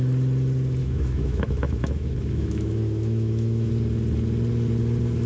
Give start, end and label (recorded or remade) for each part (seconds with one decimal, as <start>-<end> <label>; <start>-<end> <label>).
0.0-0.8 recorded; 0.8-3.7 remade; 3.7-5.3 recorded